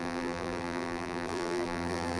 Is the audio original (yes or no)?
no